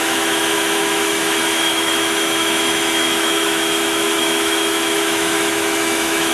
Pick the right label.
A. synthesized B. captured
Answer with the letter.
A